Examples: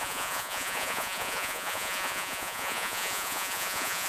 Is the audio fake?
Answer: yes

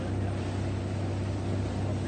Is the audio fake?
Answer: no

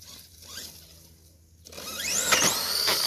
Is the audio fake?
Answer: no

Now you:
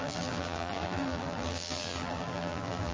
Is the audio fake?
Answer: yes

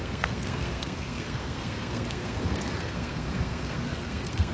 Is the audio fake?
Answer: yes